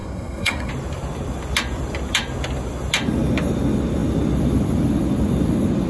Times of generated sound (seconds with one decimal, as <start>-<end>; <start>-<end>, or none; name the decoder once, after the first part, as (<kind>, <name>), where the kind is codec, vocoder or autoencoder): 0.0-0.7 (codec, SNAC)